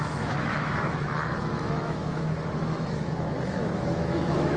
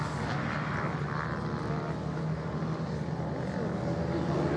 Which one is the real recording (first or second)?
second